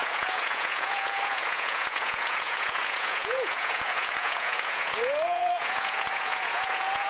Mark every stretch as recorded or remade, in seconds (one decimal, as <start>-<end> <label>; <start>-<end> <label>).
0.0-7.1 remade